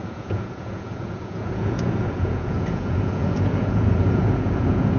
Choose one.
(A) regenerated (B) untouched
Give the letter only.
A